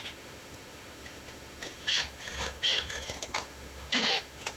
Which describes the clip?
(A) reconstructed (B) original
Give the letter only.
A